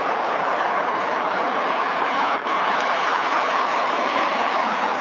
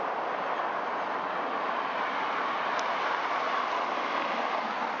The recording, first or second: second